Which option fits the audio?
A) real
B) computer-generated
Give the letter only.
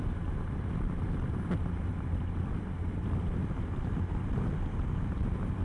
B